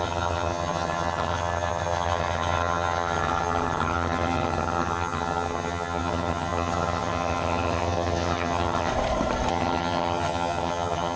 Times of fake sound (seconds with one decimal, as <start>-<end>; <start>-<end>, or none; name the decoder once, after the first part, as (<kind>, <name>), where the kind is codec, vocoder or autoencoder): 0.0-8.9 (vocoder, HiFi-GAN); 9.5-11.2